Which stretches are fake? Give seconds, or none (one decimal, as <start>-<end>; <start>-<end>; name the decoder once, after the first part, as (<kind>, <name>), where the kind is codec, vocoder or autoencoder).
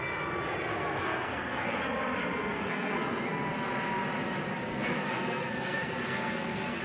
0.7-1.8 (codec, SNAC); 2.4-3.5; 4.7-6.8